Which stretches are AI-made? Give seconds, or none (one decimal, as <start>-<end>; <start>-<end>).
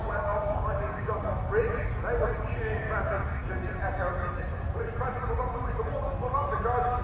0.0-1.5